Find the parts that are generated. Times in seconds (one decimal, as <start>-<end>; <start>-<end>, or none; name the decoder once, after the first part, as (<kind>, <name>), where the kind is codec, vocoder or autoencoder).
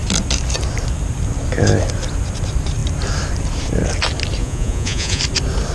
4.4-5.2 (vocoder, Vocos)